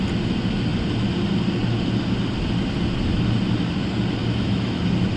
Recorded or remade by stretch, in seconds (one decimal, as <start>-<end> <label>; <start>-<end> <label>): 0.0-4.2 recorded; 4.2-4.8 remade; 4.8-5.2 recorded